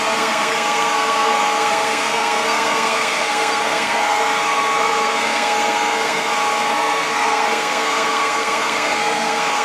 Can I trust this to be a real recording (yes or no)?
no